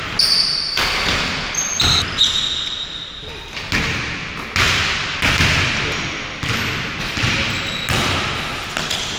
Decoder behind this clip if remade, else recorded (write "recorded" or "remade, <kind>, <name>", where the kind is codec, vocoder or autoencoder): recorded